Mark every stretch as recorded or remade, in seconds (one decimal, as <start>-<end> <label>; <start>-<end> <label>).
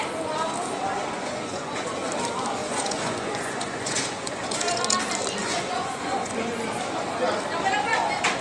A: 0.0-1.0 recorded; 1.0-2.1 remade; 2.1-2.6 recorded; 2.6-4.8 remade; 4.8-5.4 recorded; 5.4-6.3 remade; 6.3-8.4 recorded